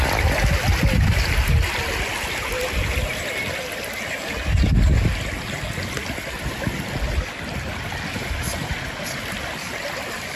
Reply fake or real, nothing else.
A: real